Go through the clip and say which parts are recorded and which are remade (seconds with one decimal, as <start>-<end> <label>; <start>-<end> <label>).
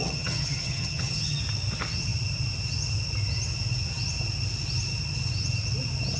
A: 0.0-1.4 remade; 1.4-6.2 recorded